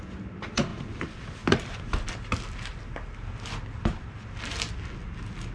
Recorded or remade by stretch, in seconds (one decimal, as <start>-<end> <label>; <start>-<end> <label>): 0.0-5.5 recorded